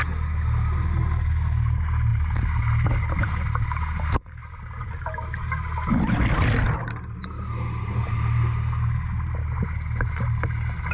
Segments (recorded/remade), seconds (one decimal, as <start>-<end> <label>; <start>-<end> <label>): 0.0-10.9 recorded